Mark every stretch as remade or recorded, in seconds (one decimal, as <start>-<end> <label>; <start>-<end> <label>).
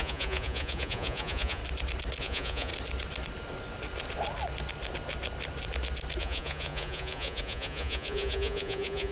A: 0.0-1.6 remade; 1.6-2.2 recorded; 2.2-2.7 remade; 2.7-6.2 recorded; 6.2-9.1 remade